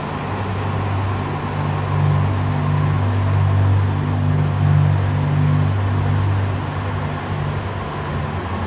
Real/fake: real